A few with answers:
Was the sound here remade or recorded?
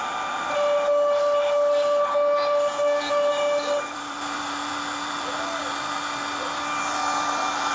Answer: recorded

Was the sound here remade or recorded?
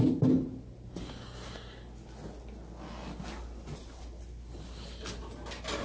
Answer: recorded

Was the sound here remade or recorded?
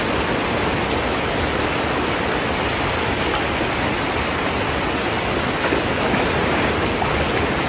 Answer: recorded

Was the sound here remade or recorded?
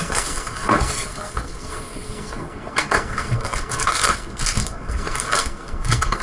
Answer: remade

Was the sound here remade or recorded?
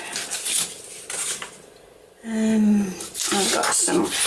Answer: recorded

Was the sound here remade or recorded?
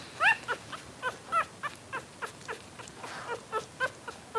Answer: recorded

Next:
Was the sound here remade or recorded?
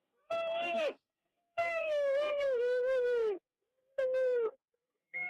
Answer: remade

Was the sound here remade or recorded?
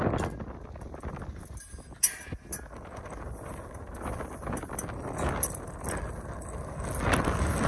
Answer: recorded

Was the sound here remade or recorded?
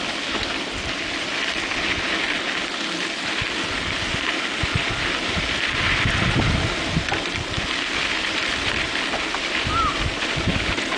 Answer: recorded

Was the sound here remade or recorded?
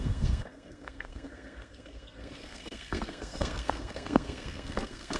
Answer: remade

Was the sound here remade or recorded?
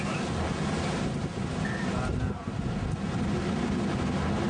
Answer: recorded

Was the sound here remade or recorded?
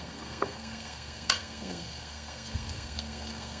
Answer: remade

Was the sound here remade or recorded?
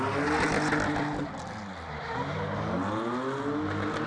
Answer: recorded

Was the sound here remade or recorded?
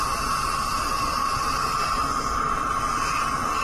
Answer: recorded